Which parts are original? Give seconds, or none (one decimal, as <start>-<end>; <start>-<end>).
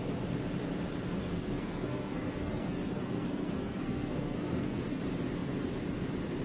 0.0-1.2; 5.0-6.4